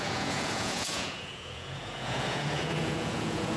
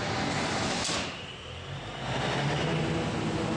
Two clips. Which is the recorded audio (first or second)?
second